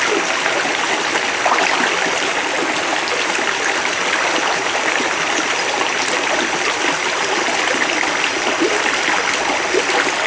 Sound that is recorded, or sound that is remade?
recorded